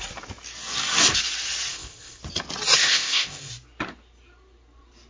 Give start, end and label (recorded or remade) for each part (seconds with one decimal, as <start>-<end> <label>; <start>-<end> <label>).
0.0-1.7 recorded; 1.7-2.2 remade; 2.2-2.8 recorded; 2.8-3.5 remade; 3.5-5.1 recorded

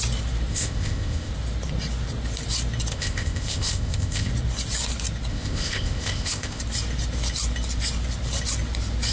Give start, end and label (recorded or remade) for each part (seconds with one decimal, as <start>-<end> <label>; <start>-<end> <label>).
0.0-0.5 recorded; 0.5-1.3 remade; 1.3-2.9 recorded; 2.9-4.3 remade; 4.3-5.3 recorded; 5.3-6.6 remade; 6.6-9.1 recorded

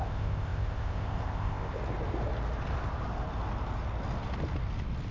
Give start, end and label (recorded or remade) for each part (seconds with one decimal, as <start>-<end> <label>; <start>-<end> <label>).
0.0-1.8 remade; 1.8-5.1 recorded

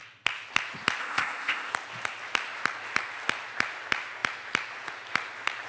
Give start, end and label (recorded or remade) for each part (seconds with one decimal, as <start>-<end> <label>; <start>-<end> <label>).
0.0-1.0 recorded; 1.0-1.7 remade; 1.7-5.7 recorded

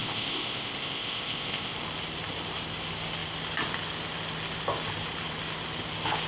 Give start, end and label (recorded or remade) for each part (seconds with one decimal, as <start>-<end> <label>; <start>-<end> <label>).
0.0-1.7 remade; 1.7-6.3 recorded

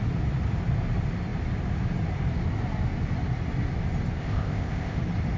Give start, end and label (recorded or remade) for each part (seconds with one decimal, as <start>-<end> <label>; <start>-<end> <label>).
0.0-4.2 recorded; 4.2-5.0 remade; 5.0-5.4 recorded